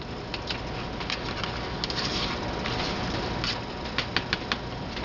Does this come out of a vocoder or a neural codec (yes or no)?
no